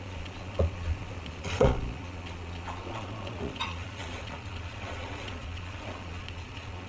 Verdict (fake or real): fake